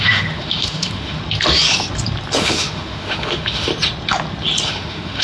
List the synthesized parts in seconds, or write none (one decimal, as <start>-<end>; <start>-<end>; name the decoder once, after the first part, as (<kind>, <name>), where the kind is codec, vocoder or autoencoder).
0.0-1.2 (autoencoder, DAC-VAE); 2.4-3.7; 4.7-5.2